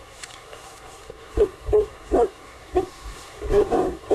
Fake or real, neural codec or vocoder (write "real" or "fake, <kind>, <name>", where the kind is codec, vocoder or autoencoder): fake, codec, SNAC